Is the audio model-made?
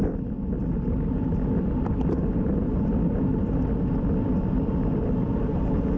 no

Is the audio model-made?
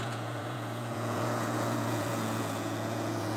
yes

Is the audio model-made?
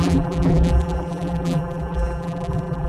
yes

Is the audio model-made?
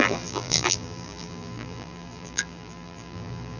yes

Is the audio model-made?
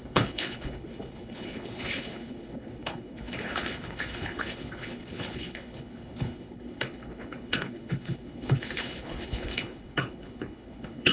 yes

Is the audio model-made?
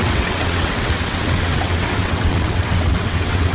yes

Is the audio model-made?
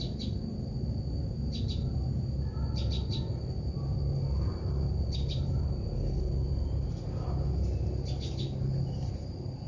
no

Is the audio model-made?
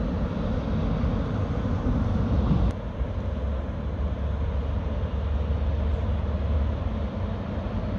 no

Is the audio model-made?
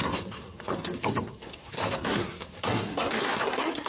yes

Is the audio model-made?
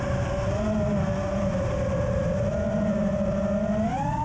no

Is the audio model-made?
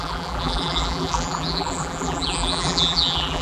yes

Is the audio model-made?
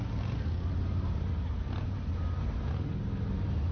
no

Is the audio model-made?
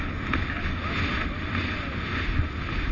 no